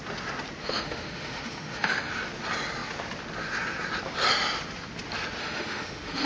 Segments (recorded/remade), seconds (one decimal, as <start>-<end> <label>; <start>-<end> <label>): 0.0-0.6 recorded; 0.6-2.1 remade; 2.1-5.4 recorded; 5.4-6.3 remade